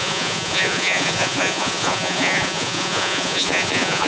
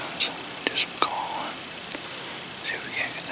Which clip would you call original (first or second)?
second